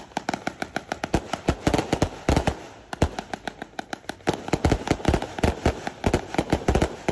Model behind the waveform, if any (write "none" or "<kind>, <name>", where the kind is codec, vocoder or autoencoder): none